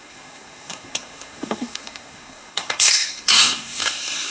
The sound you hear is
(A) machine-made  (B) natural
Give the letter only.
A